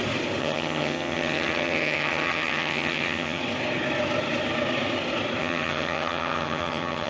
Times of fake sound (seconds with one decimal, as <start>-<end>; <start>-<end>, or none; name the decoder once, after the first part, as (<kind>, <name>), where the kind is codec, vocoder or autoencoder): 0.4-3.4 (vocoder, HiFi-GAN); 5.4-7.1

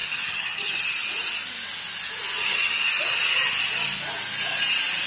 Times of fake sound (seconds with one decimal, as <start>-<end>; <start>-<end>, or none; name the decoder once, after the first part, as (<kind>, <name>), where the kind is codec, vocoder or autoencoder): 0.0-0.8 (vocoder, HiFi-GAN); 2.4-2.9

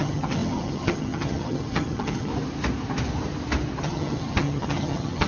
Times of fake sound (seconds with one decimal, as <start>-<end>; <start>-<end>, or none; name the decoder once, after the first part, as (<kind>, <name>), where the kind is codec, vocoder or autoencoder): 0.0-2.3 (vocoder, HiFi-GAN); 3.8-5.3

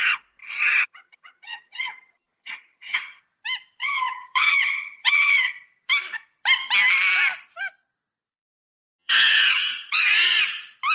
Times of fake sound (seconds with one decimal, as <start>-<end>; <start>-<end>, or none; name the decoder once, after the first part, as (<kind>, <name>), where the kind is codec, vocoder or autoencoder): 0.4-3.2 (vocoder, HiFi-GAN); 3.8-5.5; 9.0-10.4

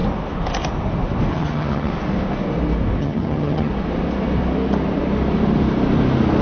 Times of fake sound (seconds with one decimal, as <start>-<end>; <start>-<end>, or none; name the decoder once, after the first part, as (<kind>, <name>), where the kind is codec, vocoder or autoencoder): 1.3-1.9 (vocoder, HiFi-GAN); 3.0-3.7

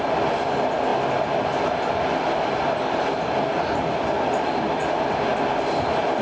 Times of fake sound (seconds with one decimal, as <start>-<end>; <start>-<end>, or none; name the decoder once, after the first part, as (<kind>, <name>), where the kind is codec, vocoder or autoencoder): none